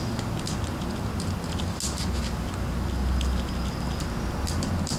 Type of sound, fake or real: real